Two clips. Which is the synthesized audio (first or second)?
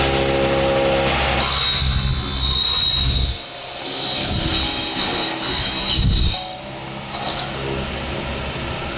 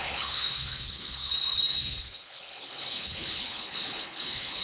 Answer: second